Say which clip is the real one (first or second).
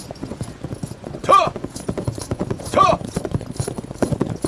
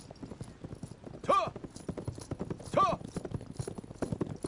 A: second